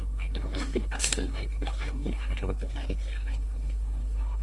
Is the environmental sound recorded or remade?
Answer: remade